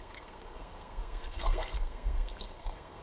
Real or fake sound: fake